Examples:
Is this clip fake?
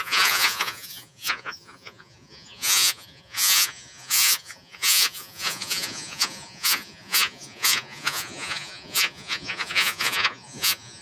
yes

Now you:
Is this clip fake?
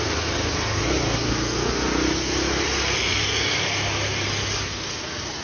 no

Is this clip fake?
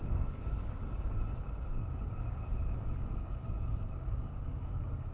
yes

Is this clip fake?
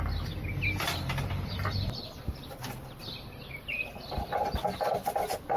no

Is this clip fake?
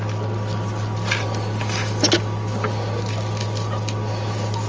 no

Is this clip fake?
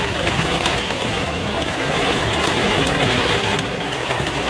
yes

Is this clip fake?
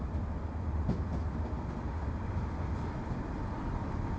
no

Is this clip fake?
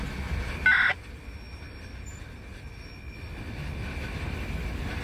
no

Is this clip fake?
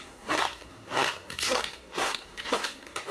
yes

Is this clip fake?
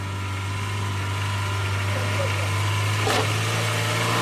no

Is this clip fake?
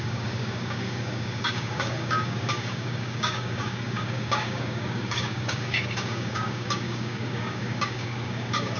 yes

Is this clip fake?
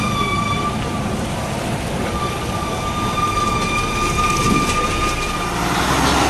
no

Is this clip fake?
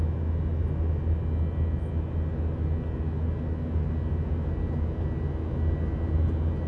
no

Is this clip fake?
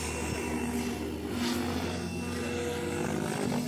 no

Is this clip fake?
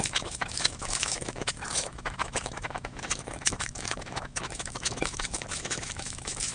yes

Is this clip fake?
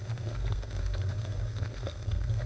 yes